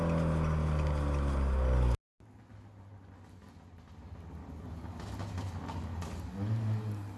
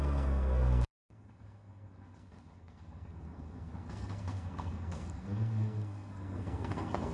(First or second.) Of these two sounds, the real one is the first